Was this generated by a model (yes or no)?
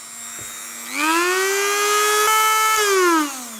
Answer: no